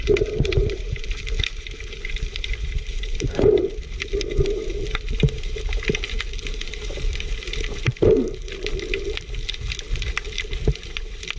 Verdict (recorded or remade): remade